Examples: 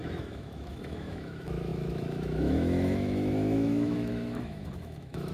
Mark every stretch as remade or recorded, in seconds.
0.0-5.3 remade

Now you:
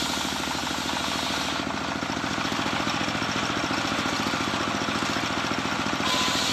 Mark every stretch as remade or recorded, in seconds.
0.0-6.5 recorded

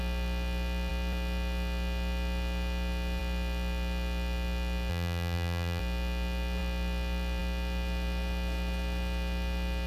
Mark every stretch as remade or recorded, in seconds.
0.0-4.9 recorded; 4.9-5.8 remade; 5.8-9.9 recorded